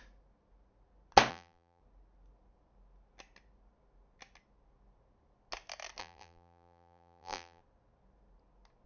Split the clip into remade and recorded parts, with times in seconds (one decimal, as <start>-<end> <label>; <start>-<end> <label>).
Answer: 0.0-1.3 recorded; 1.3-1.8 remade; 1.8-6.0 recorded; 6.0-7.6 remade; 7.6-8.9 recorded